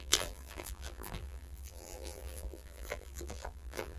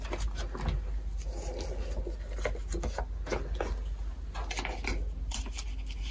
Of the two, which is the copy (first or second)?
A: first